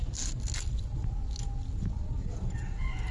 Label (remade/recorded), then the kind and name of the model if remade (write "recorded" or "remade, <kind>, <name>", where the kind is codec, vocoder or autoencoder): recorded